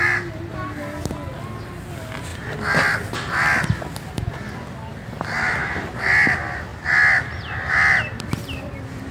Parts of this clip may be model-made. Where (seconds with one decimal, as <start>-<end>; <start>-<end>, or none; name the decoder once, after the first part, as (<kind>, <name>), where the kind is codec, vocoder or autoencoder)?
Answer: none